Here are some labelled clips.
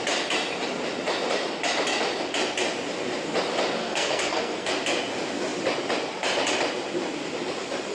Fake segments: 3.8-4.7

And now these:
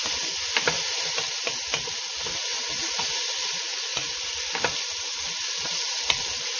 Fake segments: none

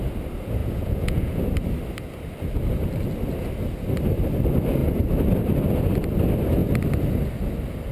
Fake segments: 0.6-1.4

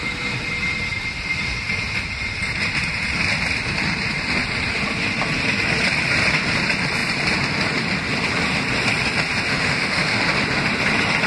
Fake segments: 9.5-10.2

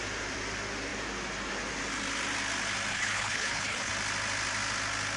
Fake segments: 2.9-3.9